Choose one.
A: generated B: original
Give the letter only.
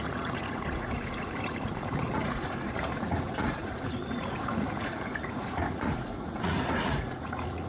A